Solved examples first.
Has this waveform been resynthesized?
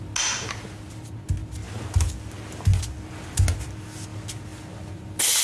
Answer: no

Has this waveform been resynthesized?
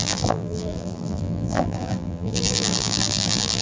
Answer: yes